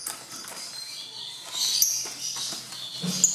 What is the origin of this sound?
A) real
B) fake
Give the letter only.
A